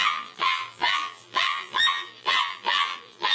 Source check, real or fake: fake